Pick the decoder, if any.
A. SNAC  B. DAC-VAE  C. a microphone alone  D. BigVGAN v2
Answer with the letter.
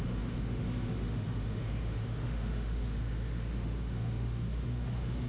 B